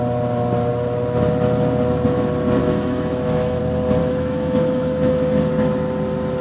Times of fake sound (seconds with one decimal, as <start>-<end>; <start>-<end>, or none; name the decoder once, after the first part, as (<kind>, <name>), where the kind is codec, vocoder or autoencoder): 2.6-3.6 (autoencoder, DAC-VAE); 4.0-5.5